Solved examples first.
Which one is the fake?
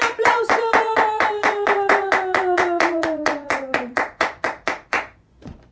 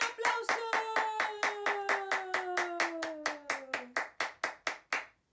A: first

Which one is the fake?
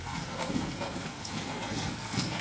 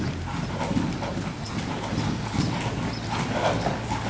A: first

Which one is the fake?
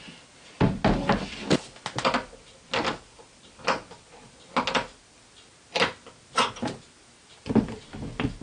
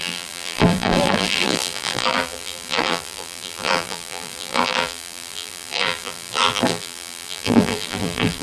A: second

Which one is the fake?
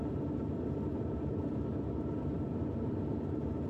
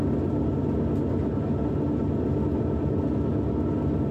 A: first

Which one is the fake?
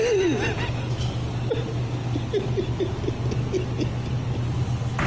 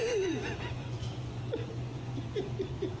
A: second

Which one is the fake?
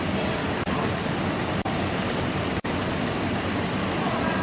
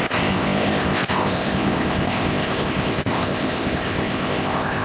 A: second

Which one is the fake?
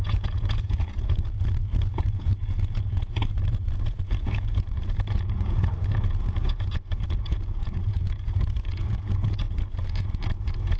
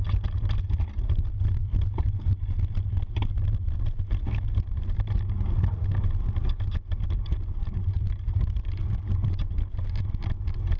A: first